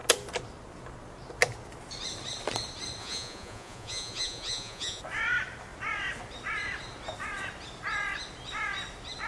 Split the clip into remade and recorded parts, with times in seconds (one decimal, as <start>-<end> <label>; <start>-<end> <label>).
0.0-3.0 recorded; 3.0-5.0 remade; 5.0-9.3 recorded